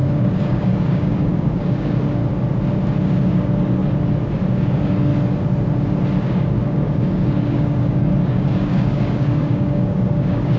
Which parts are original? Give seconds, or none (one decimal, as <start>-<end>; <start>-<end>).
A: 2.2-3.0; 3.8-4.6; 5.1-6.2